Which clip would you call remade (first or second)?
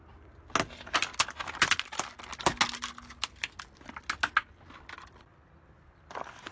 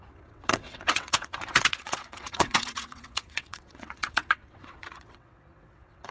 second